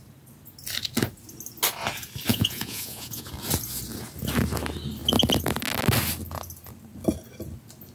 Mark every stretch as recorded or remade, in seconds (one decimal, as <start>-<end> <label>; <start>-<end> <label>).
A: 0.0-2.3 recorded; 2.3-3.3 remade; 3.3-7.9 recorded